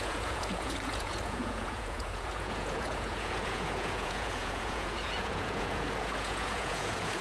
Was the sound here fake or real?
fake